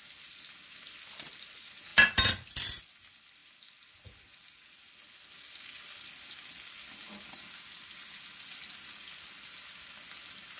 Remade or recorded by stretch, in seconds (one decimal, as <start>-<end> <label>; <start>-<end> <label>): 0.0-10.6 recorded